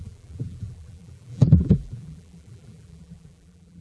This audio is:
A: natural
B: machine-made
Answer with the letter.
B